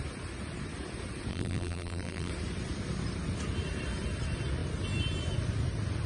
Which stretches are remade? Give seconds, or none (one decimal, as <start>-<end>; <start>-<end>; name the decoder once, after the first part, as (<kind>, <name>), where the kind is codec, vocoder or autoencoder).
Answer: 1.3-2.3 (vocoder, BigVGAN v2)